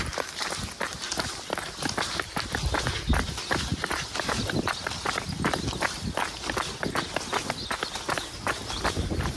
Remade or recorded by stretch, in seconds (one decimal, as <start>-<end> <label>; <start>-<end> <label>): 0.0-3.7 recorded; 3.7-5.6 remade; 5.6-9.4 recorded